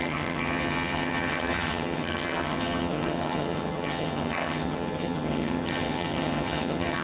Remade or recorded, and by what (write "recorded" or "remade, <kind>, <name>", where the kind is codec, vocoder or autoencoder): remade, vocoder, HiFi-GAN